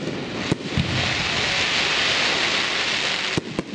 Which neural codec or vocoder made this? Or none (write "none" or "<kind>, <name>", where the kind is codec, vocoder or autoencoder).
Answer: none